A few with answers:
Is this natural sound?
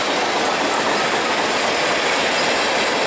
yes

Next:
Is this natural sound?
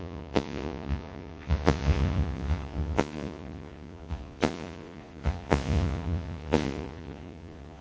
no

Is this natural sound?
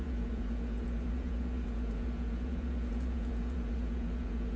no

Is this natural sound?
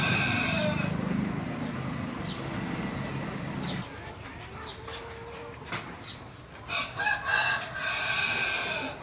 yes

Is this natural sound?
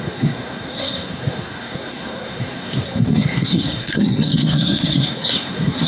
no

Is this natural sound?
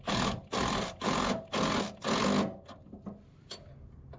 yes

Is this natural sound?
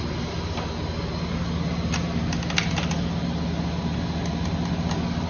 yes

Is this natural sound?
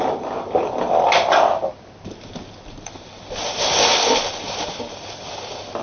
yes